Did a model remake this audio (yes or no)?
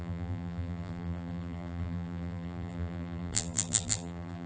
yes